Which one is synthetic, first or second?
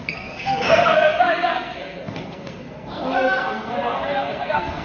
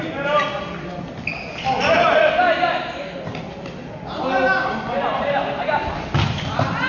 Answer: first